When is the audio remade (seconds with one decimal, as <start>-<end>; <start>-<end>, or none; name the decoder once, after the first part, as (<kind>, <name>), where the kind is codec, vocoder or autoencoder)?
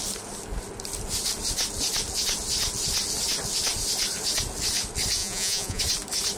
5.2-5.8 (vocoder, Vocos)